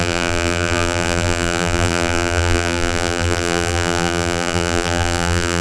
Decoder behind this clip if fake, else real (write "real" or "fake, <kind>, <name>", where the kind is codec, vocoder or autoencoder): fake, vocoder, BigVGAN v2